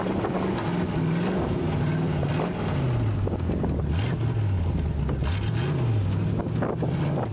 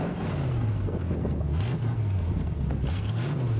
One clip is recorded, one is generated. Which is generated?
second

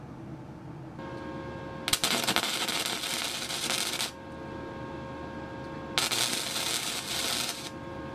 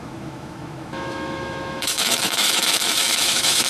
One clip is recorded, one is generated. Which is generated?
second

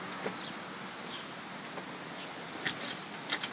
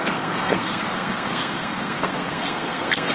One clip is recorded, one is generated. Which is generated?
second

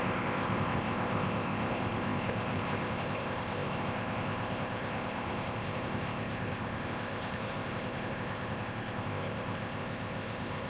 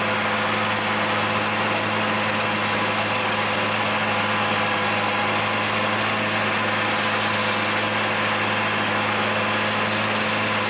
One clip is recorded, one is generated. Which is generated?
first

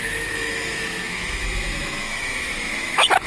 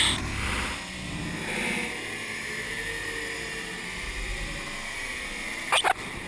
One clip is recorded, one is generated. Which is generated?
first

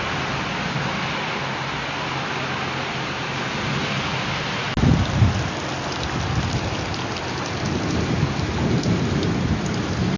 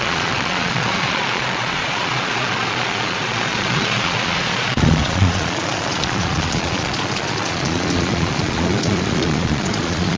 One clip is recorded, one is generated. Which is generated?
second